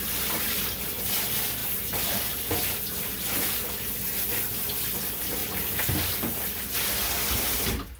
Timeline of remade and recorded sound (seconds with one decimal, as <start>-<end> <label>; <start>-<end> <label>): 0.0-1.6 recorded; 1.6-2.4 remade; 2.4-5.4 recorded; 5.4-6.2 remade; 6.2-8.0 recorded